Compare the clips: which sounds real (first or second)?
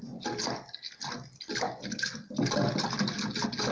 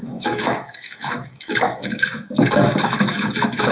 first